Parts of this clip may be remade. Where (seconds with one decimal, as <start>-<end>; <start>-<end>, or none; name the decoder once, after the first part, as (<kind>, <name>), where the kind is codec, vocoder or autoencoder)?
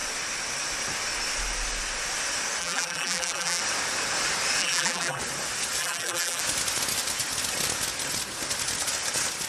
2.6-3.6 (vocoder, BigVGAN v2); 4.6-5.2; 5.8-6.4